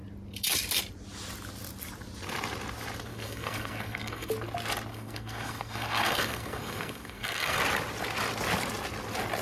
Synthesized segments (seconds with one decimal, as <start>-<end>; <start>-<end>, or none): 3.1-4.3; 4.9-7.6